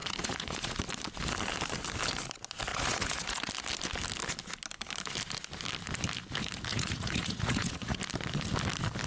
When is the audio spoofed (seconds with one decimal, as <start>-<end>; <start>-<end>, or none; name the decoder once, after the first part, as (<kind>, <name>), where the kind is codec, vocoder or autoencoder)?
0.0-0.8 (vocoder, Vocos); 2.7-3.5; 6.7-8.0